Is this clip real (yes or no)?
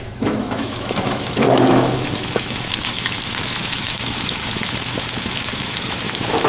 no